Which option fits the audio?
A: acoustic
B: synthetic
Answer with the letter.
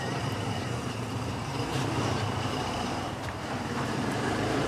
B